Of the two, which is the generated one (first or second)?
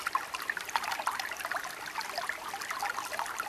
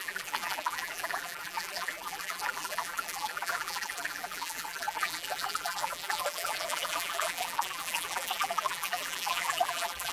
second